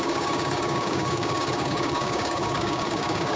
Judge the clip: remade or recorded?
remade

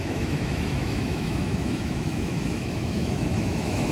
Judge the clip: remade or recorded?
remade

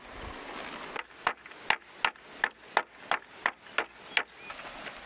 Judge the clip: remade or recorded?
recorded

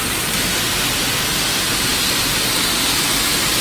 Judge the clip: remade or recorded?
recorded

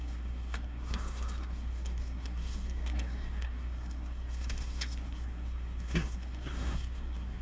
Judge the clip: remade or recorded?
remade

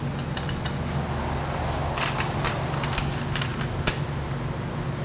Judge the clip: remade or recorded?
recorded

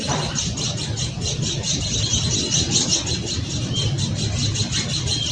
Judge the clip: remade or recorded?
recorded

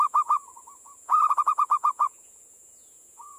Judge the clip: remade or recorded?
remade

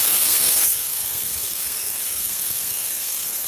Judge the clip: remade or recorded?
remade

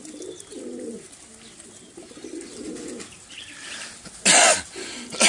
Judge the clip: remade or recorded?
recorded